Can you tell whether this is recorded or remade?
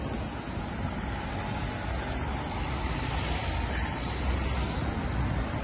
recorded